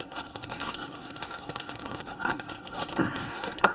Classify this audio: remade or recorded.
remade